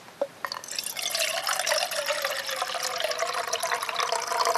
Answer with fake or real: real